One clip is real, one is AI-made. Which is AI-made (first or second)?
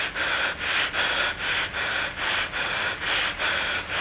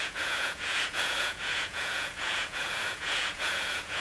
second